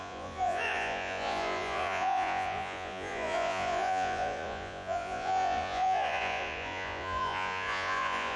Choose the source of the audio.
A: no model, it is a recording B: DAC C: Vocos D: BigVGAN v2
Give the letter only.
C